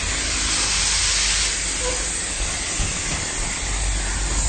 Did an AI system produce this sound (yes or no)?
no